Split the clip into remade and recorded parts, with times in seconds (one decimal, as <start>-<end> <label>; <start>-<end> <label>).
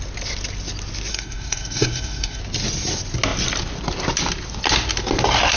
0.0-1.1 recorded; 1.1-2.4 remade; 2.4-5.6 recorded